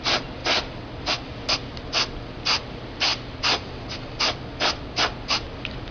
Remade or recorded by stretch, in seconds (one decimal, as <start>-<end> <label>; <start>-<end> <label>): 0.0-5.9 recorded